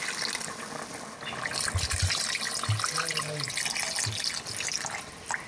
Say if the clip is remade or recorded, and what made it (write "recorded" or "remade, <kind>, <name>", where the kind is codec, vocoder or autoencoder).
recorded